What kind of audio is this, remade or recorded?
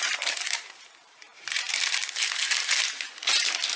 remade